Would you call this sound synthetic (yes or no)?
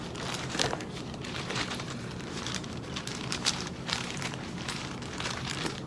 yes